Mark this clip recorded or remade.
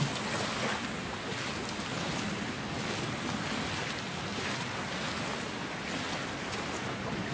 recorded